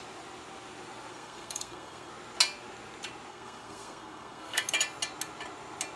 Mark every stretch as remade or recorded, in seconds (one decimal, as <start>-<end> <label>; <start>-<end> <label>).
0.0-1.1 recorded; 1.1-2.1 remade; 2.1-3.3 recorded; 3.3-4.6 remade; 4.6-6.0 recorded